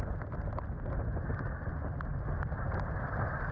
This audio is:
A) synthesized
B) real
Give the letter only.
B